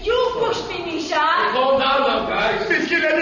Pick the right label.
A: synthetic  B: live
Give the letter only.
B